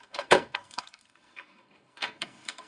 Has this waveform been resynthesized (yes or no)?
yes